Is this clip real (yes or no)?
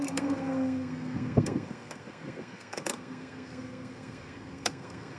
no